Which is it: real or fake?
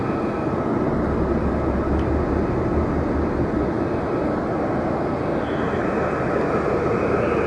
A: real